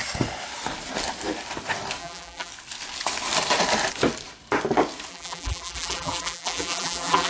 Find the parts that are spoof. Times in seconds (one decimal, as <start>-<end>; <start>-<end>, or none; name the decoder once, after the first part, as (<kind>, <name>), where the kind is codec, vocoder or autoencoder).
2.0-2.5 (vocoder, BigVGAN v2); 5.1-7.3